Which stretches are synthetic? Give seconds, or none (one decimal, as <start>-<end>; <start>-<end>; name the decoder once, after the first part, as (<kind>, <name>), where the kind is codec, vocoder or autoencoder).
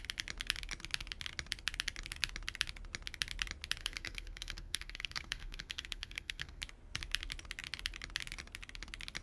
3.8-6.6 (codec, SNAC)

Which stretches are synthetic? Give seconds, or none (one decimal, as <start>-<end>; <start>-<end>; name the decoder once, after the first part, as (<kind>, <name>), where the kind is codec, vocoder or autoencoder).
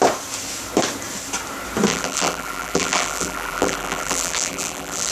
1.9-5.1 (vocoder, BigVGAN v2)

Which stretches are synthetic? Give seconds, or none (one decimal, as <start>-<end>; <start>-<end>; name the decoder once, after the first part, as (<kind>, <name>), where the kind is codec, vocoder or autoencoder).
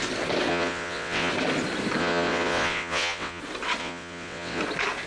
0.5-1.3 (vocoder, WaveNeXt); 2.0-3.4; 3.8-4.6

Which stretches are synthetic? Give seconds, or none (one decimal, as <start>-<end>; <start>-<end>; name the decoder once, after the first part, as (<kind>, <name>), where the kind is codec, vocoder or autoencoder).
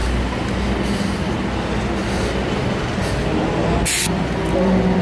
none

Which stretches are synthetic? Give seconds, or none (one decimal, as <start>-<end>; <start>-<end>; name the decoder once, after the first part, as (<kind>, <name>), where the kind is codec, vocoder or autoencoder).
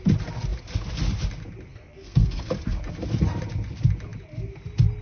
1.7-2.5 (codec, SNAC)